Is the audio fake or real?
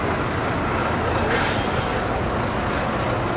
real